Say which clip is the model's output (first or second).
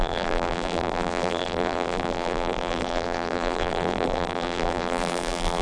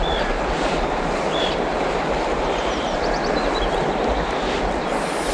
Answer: first